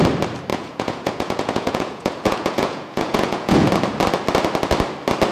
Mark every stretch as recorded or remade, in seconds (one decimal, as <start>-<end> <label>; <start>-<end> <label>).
0.0-0.5 recorded; 0.5-3.7 remade; 3.7-5.3 recorded